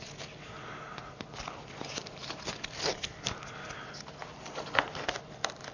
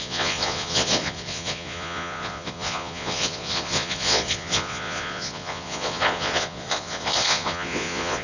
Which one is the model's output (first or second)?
second